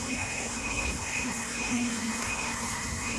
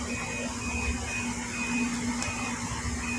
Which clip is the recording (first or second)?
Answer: second